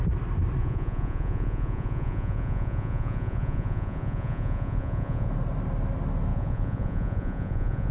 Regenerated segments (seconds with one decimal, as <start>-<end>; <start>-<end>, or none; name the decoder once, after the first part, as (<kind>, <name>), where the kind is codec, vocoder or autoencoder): 0.6-5.3 (vocoder, Vocos); 6.3-7.9

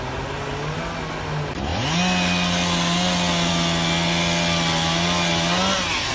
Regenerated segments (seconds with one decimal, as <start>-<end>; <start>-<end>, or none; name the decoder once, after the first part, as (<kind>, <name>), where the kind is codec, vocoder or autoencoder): none

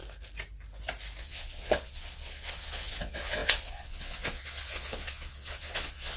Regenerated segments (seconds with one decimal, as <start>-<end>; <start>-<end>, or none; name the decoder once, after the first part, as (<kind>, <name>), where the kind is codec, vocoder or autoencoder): 1.2-6.2 (vocoder, Vocos)

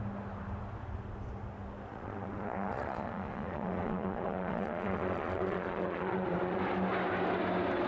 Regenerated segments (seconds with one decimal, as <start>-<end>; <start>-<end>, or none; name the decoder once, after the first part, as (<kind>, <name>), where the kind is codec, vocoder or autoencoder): 1.9-6.6 (vocoder, Vocos)

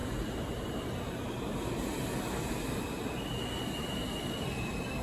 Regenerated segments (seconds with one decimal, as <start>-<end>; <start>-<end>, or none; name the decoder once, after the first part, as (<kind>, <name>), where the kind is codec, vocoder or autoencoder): none

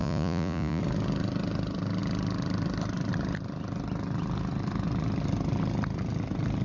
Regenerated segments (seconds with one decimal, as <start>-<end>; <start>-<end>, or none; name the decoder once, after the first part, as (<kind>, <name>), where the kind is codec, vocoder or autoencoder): 0.0-0.8 (vocoder, Vocos)